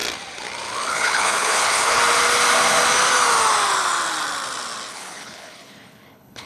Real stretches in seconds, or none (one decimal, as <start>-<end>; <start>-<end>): 0.0-0.9; 2.0-4.9